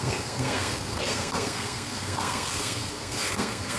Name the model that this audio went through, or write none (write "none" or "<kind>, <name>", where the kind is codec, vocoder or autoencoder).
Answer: codec, SNAC